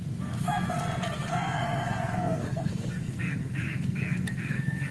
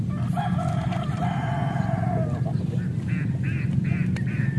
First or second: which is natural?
second